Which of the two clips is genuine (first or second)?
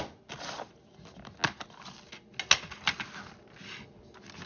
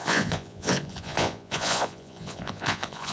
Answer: first